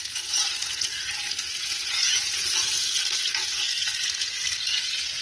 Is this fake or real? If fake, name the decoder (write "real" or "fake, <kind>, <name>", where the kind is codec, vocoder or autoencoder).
fake, vocoder, Vocos